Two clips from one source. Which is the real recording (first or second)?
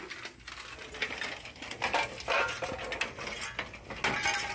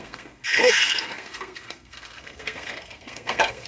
first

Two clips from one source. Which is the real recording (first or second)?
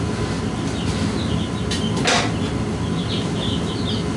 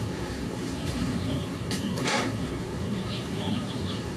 first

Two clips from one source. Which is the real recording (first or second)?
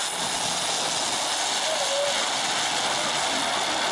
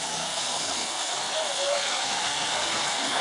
first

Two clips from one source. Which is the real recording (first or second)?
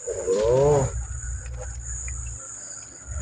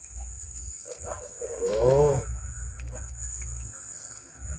first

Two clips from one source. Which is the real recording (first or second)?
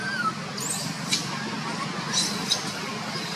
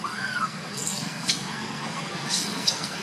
first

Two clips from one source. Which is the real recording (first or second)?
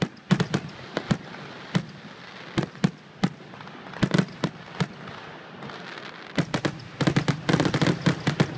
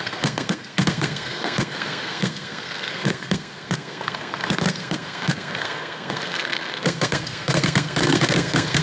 first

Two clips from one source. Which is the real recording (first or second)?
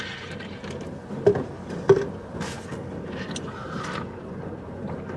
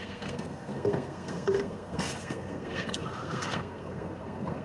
first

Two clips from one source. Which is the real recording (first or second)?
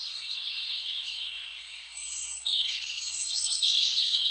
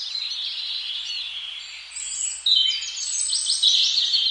second